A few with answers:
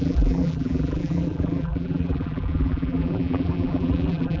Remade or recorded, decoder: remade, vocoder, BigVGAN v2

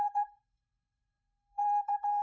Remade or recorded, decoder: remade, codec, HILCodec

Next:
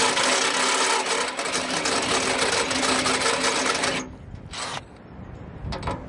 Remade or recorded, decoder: recorded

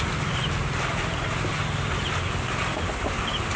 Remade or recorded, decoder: recorded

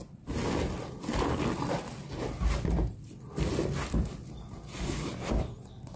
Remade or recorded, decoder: remade, vocoder, BigVGAN v2